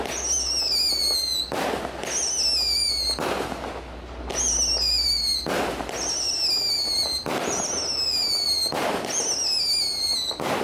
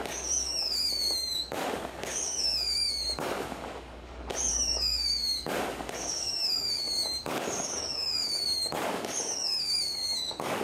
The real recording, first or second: first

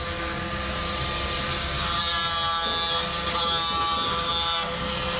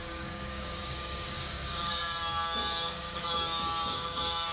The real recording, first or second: first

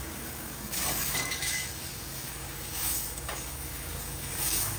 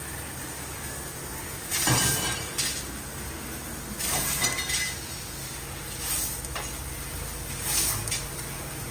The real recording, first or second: second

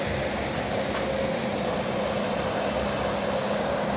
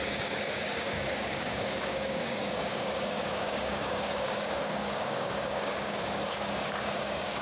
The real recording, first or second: first